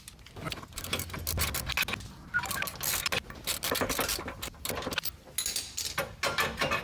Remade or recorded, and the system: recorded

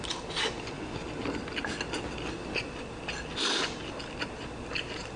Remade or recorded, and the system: recorded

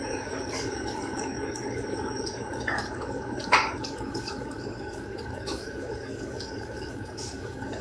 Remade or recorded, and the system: remade, codec, DAC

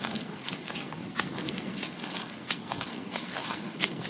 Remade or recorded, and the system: remade, codec, SNAC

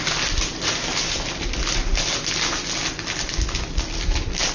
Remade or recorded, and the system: recorded